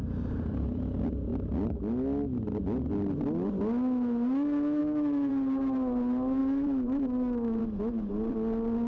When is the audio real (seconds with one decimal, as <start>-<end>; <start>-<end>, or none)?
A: 0.0-4.8; 5.3-6.4; 7.6-8.9